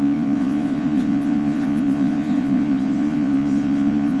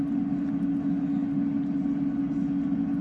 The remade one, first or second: first